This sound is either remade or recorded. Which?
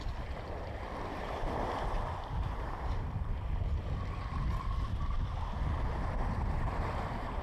remade